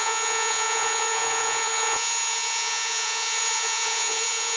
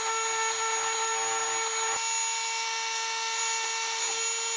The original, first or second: second